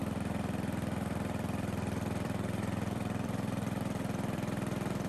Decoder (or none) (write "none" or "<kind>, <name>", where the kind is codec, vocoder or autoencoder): vocoder, BigVGAN v2